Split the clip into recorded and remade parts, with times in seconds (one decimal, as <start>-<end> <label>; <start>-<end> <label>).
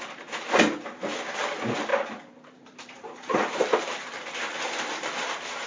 0.0-1.9 recorded; 1.9-5.3 remade; 5.3-5.7 recorded